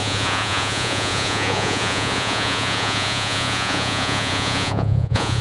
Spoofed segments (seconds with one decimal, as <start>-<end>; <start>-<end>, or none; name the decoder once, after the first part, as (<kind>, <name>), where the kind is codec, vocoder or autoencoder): 0.0-5.4 (vocoder, Vocos)